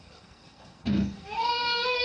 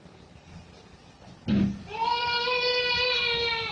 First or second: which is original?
second